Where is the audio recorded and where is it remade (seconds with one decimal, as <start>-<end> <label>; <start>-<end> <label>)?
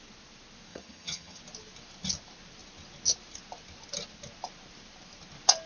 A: 0.0-0.7 recorded; 0.7-1.4 remade; 1.4-5.7 recorded